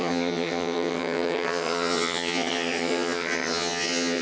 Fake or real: fake